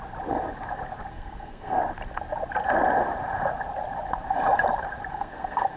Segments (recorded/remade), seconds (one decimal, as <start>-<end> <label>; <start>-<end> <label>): 0.0-1.1 recorded; 1.1-1.8 remade; 1.8-5.1 recorded; 5.1-5.8 remade